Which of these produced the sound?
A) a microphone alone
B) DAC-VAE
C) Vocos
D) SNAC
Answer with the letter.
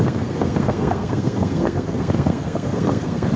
D